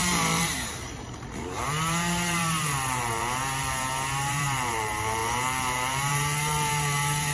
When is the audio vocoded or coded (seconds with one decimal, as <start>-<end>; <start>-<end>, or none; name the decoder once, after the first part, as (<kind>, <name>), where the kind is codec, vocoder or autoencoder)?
0.0-7.3 (vocoder, BigVGAN v2)